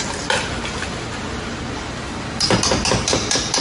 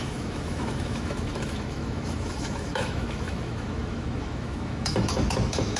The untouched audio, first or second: first